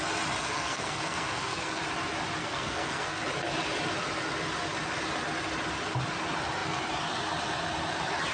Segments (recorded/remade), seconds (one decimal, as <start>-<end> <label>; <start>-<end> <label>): 0.0-0.4 recorded; 0.4-1.8 remade; 1.8-2.4 recorded; 2.4-3.2 remade; 3.2-8.3 recorded